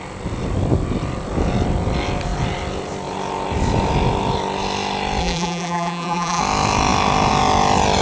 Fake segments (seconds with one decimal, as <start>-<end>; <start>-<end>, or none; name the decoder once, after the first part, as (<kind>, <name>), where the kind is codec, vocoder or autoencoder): 5.2-6.4 (vocoder, BigVGAN v2)

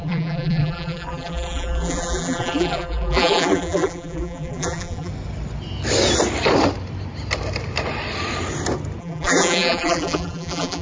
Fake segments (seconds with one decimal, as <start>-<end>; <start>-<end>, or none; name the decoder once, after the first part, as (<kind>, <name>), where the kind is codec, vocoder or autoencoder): 0.0-5.1 (vocoder, BigVGAN v2); 9.0-10.8

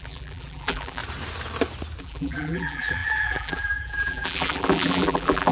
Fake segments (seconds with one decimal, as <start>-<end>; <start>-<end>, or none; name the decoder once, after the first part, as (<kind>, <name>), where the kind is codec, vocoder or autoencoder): 0.0-1.0 (vocoder, BigVGAN v2); 2.0-5.5

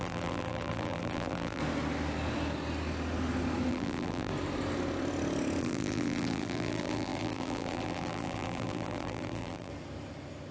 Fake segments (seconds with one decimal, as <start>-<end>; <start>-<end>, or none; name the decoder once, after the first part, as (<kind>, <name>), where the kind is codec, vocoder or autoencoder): 0.0-1.6 (vocoder, BigVGAN v2); 3.7-4.3; 5.6-9.7

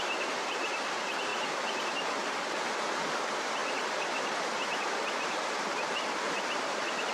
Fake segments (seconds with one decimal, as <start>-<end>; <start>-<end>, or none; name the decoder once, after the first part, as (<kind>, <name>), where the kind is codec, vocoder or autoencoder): 1.3-1.9 (vocoder, BigVGAN v2); 3.6-5.0

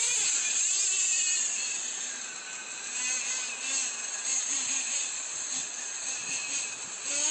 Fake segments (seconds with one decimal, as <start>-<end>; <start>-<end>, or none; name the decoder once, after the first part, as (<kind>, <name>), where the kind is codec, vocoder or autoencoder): 0.0-2.6 (vocoder, BigVGAN v2); 4.3-6.2